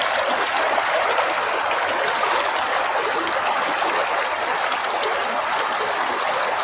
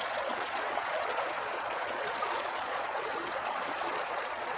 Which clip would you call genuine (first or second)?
first